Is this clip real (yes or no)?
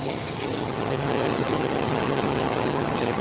no